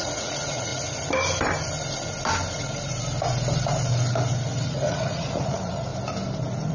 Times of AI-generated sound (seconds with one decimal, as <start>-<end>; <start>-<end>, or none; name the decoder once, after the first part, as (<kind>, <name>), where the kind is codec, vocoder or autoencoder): 0.0-0.7 (vocoder, Vocos); 4.7-5.9